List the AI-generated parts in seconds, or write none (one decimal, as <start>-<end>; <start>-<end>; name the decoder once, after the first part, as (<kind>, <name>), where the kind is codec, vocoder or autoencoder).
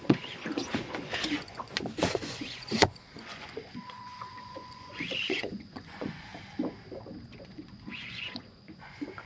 0.0-6.3 (vocoder, Vocos); 7.4-9.3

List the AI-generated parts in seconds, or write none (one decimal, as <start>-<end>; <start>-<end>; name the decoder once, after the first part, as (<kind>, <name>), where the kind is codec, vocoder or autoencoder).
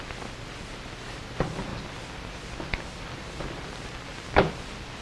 1.7-4.5 (vocoder, BigVGAN v2)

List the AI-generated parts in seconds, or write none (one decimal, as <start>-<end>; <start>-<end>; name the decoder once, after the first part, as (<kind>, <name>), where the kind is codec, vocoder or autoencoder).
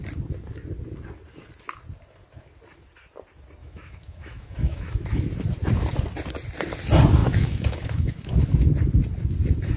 3.6-5.2 (autoencoder, DAC-VAE); 7.2-8.5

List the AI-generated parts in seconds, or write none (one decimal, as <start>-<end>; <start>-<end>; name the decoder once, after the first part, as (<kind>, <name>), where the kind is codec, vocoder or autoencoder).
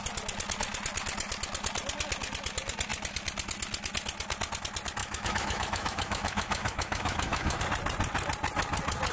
5.0-7.6 (autoencoder, DAC-VAE)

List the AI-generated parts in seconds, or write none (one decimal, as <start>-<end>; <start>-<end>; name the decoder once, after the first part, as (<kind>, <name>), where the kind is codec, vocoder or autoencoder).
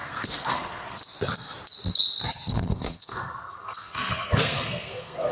0.0-1.0 (codec, SNAC); 2.5-5.3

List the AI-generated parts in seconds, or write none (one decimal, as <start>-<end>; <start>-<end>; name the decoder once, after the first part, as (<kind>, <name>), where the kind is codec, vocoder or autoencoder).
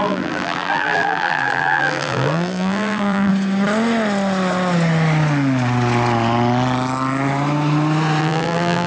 0.0-3.3 (vocoder, BigVGAN v2); 8.2-8.9